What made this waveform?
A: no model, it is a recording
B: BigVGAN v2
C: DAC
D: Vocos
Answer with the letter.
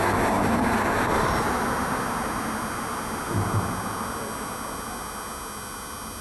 A